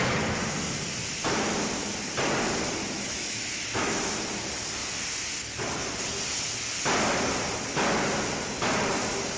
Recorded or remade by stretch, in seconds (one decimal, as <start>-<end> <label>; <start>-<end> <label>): 0.0-2.8 recorded; 2.8-4.1 remade; 4.1-9.4 recorded

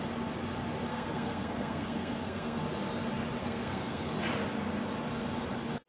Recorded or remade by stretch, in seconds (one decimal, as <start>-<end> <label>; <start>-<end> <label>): 0.0-0.9 recorded; 0.9-2.6 remade; 2.6-3.4 recorded; 3.4-4.1 remade; 4.1-5.9 recorded

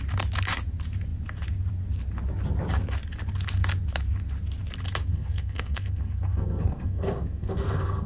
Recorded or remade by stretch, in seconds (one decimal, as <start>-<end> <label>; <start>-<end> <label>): 0.0-5.1 recorded; 5.1-8.1 remade

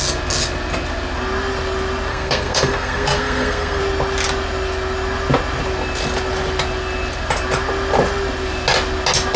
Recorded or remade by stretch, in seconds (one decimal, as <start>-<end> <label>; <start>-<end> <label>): 0.0-2.1 recorded; 2.1-3.8 remade; 3.8-9.4 recorded

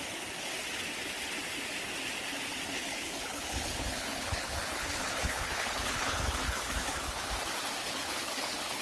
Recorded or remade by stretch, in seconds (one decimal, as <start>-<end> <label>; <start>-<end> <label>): 0.0-2.7 recorded; 2.7-7.3 remade; 7.3-7.8 recorded; 7.8-8.8 remade

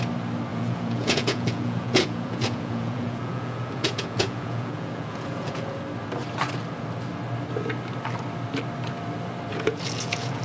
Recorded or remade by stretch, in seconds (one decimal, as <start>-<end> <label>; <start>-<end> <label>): 0.0-0.5 recorded; 0.5-5.8 remade; 5.8-9.5 recorded; 9.5-10.4 remade

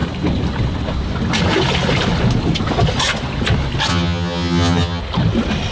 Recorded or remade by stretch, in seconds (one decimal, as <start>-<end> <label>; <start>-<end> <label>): 0.0-3.9 recorded; 3.9-5.0 remade; 5.0-5.7 recorded

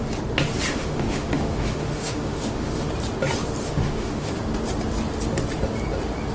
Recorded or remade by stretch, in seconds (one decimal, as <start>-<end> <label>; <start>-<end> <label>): 0.0-0.7 recorded; 0.7-2.9 remade; 2.9-3.6 recorded; 3.6-4.3 remade; 4.3-6.3 recorded